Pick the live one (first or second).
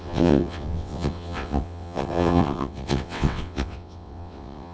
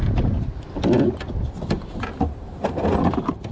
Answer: second